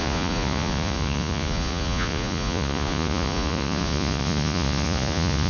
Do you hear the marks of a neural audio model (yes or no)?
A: yes